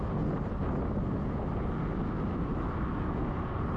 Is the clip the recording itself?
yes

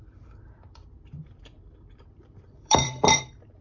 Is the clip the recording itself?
no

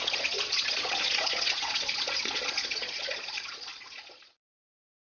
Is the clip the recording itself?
no